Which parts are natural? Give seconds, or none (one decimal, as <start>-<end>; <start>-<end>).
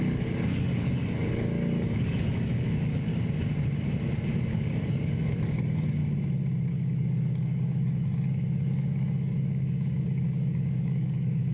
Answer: 3.1-4.5; 6.0-6.7